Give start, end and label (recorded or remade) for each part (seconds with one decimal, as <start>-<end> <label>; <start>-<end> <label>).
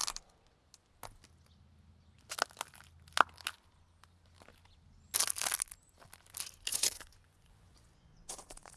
0.0-6.7 recorded; 6.7-8.8 remade